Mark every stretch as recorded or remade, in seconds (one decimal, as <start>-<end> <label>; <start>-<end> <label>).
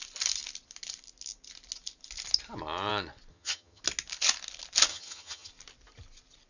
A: 0.0-3.3 recorded; 3.3-3.8 remade; 3.8-4.9 recorded; 4.9-5.5 remade; 5.5-6.5 recorded